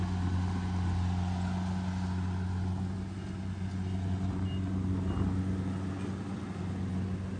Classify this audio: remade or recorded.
recorded